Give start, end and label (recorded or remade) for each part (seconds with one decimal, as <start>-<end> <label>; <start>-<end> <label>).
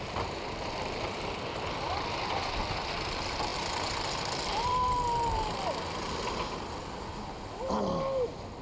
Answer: 0.0-8.6 recorded